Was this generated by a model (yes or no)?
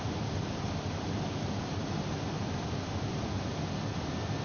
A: no